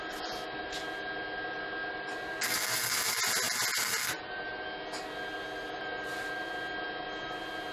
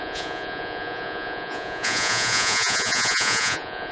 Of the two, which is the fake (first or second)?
second